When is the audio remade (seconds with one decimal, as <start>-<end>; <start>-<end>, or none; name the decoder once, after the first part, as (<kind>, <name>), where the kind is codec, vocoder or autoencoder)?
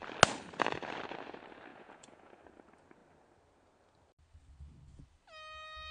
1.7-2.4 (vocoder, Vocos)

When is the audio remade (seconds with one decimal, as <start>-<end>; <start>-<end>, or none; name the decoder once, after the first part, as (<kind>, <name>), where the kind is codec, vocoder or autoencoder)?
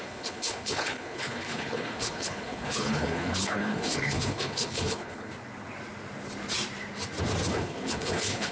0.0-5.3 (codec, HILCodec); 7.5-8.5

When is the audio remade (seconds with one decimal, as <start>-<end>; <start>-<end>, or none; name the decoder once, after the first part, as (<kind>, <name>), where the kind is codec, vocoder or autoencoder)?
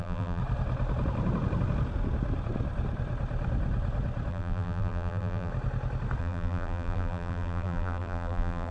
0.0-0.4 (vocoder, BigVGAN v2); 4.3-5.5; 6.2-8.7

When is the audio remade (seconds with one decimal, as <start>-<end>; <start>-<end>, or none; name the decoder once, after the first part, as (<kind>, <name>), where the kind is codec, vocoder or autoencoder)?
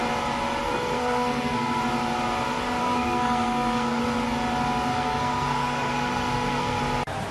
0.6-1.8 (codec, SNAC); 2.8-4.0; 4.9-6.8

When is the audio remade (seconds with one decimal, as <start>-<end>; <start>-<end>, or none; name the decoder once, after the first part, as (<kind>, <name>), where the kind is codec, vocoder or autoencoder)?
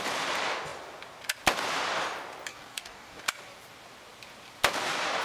2.5-3.2 (codec, DAC)